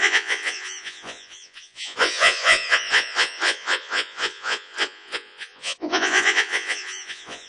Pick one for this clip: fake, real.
fake